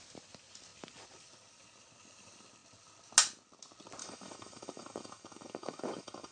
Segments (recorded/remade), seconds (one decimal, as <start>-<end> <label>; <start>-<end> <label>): 0.0-4.0 recorded; 4.0-6.3 remade